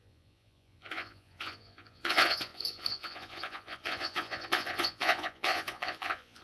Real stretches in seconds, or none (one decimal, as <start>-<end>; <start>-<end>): none